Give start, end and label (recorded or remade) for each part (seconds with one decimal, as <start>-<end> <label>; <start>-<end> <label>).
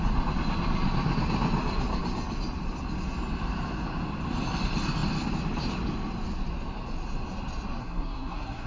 0.0-7.8 recorded; 7.8-8.7 remade